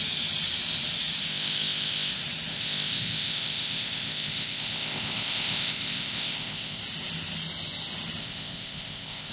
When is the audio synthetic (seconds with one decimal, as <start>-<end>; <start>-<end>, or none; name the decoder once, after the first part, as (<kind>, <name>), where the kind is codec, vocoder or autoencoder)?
1.3-2.1 (codec, ZipCodec); 2.5-6.8; 8.2-9.3